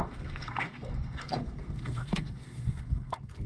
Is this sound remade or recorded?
remade